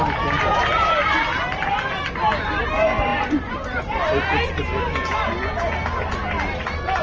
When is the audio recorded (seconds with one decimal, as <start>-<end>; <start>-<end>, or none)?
0.0-0.5; 1.7-3.1; 3.8-7.0